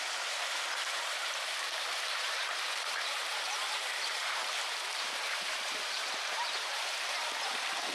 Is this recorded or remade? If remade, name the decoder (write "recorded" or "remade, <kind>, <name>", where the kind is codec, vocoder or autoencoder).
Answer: remade, vocoder, BigVGAN v2